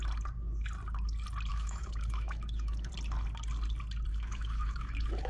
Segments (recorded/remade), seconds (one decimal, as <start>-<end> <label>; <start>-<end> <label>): 0.0-1.5 recorded; 1.5-2.9 remade; 2.9-4.1 recorded; 4.1-5.3 remade